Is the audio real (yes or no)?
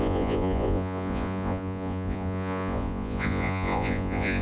no